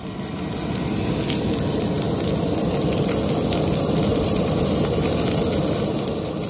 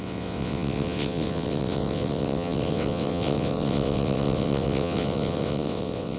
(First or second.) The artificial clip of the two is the second